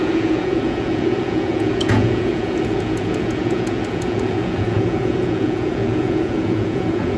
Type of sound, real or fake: fake